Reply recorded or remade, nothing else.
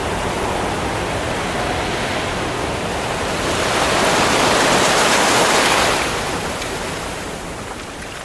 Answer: recorded